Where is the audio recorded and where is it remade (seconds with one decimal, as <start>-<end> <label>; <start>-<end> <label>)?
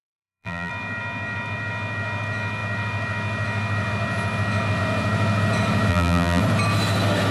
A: 0.0-0.7 remade; 0.7-5.9 recorded; 5.9-6.4 remade; 6.4-7.3 recorded